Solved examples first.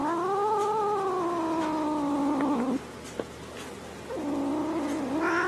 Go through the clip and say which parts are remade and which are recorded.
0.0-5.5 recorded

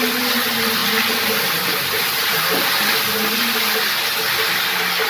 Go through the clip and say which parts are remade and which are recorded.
0.0-0.8 recorded; 0.8-2.4 remade; 2.4-5.1 recorded

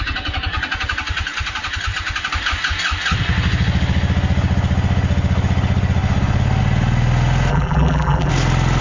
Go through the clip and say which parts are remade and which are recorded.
0.0-7.5 recorded; 7.5-8.3 remade; 8.3-8.8 recorded

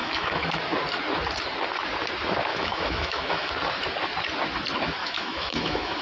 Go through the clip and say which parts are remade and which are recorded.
0.0-0.6 remade; 0.6-2.5 recorded; 2.5-3.5 remade; 3.5-5.0 recorded; 5.0-6.0 remade

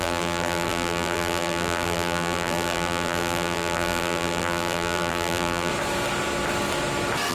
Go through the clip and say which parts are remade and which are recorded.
0.0-5.7 remade; 5.7-7.3 recorded

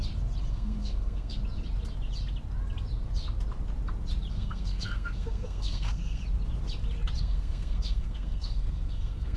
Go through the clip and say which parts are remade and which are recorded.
0.0-0.5 recorded; 0.5-1.4 remade; 1.4-4.3 recorded; 4.3-6.2 remade; 6.2-7.2 recorded; 7.2-9.4 remade